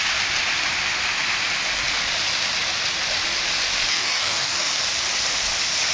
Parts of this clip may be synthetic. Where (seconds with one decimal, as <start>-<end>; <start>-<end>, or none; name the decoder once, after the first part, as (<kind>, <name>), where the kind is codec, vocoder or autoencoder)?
3.9-4.8 (codec, DAC)

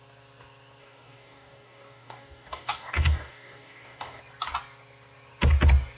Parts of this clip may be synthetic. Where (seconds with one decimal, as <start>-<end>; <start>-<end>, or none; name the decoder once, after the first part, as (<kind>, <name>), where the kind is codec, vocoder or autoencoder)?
0.8-4.2 (codec, DAC)

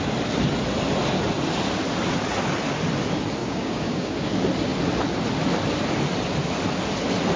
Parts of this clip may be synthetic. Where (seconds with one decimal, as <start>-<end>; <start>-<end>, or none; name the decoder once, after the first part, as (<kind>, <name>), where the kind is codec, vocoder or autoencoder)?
3.4-4.3 (codec, DAC)

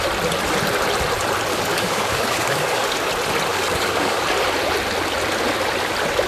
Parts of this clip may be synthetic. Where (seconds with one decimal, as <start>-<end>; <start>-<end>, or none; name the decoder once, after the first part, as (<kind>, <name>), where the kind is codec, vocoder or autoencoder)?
1.5-3.1 (codec, DAC); 3.5-4.2

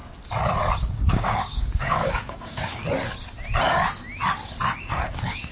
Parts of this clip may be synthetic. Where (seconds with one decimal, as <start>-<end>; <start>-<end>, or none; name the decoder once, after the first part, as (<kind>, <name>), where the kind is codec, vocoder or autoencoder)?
0.8-2.8 (codec, DAC); 4.8-5.5